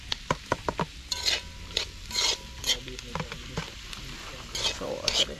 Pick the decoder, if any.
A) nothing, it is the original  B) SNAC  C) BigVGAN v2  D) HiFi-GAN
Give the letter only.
A